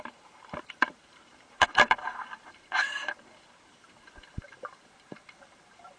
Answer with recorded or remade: remade